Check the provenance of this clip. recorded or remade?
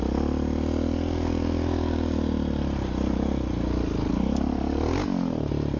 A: recorded